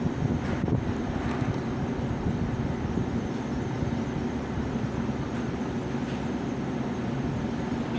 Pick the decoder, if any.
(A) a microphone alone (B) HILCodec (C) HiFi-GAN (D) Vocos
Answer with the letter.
A